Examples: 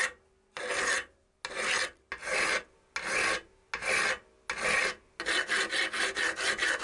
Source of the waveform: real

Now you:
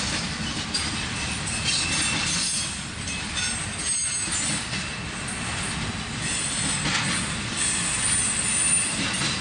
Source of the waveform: real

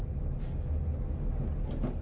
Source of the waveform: real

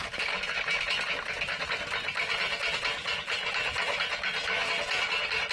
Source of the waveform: real